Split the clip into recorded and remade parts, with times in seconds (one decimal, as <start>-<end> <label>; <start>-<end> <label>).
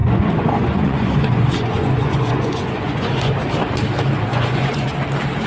0.0-3.3 remade; 3.3-4.3 recorded; 4.3-4.9 remade; 4.9-5.5 recorded